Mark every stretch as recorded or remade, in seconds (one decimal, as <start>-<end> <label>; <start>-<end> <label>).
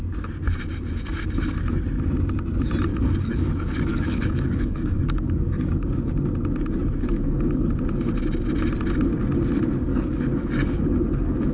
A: 0.0-2.9 recorded; 2.9-6.1 remade; 6.1-7.1 recorded; 7.1-7.7 remade; 7.7-9.9 recorded; 9.9-11.5 remade